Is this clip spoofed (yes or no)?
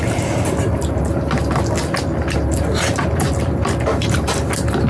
no